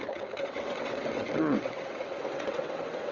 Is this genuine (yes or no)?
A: no